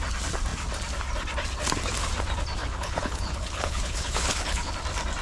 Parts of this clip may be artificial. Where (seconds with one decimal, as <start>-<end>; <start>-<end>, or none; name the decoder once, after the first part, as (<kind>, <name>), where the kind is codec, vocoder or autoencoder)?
2.6-4.7 (codec, HILCodec)